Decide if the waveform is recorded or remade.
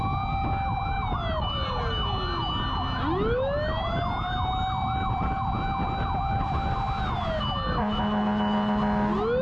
recorded